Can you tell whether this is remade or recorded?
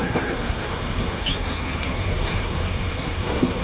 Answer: remade